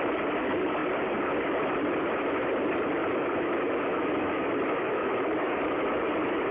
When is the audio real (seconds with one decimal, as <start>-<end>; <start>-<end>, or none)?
0.0-3.0; 6.0-6.5